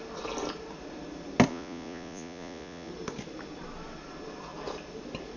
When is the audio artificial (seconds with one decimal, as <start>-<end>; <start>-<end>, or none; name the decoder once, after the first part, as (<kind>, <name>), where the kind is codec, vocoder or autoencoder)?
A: 1.5-2.9 (vocoder, Vocos)